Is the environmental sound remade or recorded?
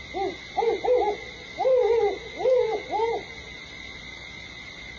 recorded